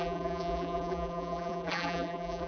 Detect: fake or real fake